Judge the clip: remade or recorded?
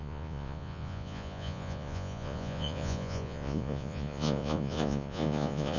remade